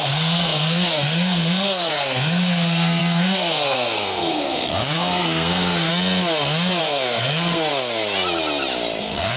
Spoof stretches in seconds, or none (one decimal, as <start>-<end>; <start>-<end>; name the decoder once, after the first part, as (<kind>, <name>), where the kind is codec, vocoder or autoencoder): 0.0-5.9 (codec, SNAC); 6.8-7.7; 9.0-9.4